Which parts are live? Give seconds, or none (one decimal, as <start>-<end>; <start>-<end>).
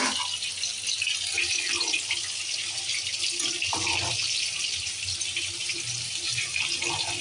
0.0-5.6; 6.6-7.2